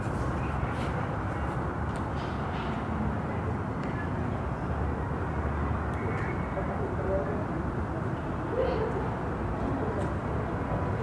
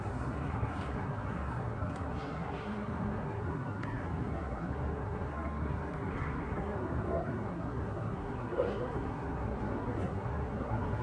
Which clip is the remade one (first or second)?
second